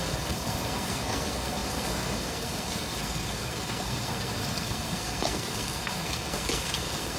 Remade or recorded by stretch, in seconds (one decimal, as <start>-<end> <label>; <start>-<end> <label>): 0.0-7.2 remade